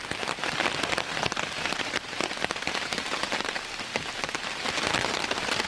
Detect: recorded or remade recorded